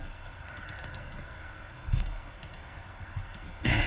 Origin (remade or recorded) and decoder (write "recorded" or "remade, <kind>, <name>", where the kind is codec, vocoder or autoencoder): remade, codec, SNAC